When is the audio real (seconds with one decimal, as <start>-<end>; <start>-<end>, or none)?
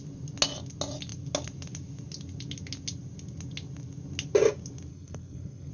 0.0-4.9